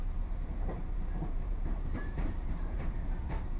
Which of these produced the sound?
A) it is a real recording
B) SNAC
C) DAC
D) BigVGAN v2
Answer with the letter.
D